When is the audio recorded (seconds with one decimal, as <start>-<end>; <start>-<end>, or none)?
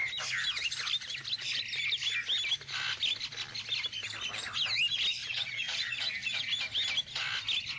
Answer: 0.0-5.2; 6.4-7.8